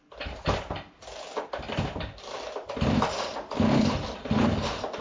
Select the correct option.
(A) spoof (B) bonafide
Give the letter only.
B